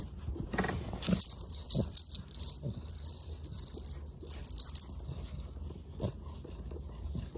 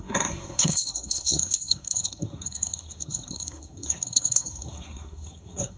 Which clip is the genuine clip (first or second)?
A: first